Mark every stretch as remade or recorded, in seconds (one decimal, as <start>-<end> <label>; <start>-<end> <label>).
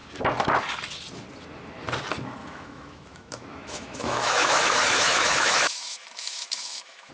0.0-2.4 recorded; 2.4-7.1 remade